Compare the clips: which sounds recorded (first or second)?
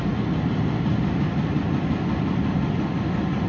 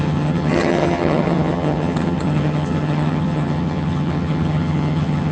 first